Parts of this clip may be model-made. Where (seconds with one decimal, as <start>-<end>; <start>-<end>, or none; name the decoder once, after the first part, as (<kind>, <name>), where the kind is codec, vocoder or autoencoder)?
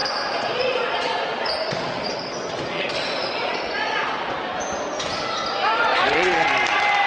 0.0-4.3 (vocoder, Vocos); 5.9-6.5